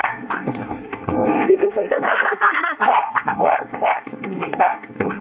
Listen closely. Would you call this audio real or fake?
fake